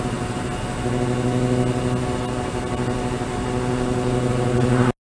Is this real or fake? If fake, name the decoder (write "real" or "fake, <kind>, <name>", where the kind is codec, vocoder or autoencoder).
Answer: real